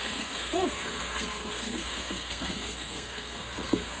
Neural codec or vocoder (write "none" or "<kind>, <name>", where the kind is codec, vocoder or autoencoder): codec, SNAC